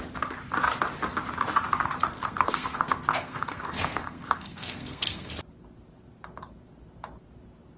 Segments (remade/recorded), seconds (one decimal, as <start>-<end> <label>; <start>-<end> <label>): 0.0-2.1 recorded; 2.1-5.3 remade; 5.3-7.8 recorded